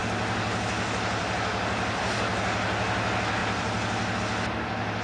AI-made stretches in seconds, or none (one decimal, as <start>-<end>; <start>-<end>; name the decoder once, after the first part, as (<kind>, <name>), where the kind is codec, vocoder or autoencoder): 0.0-2.2 (vocoder, BigVGAN v2); 3.4-4.2